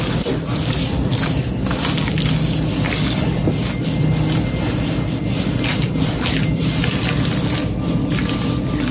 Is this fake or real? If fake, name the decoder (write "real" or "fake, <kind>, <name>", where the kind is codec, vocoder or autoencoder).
real